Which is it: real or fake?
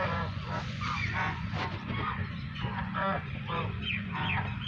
fake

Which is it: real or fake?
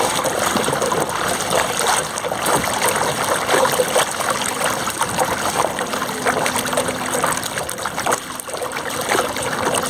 fake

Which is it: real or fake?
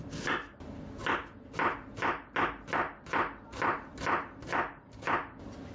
real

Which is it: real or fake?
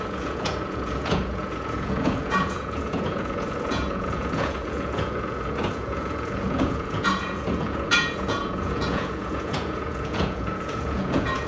fake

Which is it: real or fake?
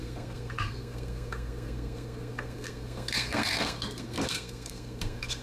fake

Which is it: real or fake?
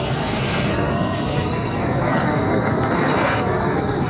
fake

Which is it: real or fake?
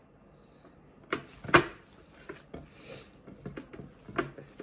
real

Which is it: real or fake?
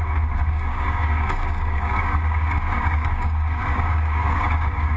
fake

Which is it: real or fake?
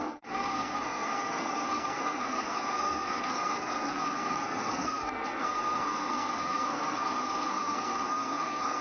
fake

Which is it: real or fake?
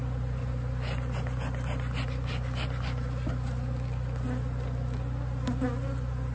real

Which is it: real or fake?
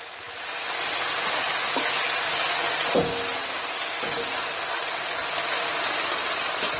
real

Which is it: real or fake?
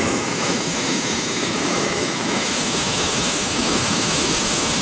fake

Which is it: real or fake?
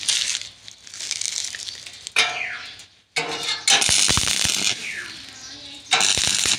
real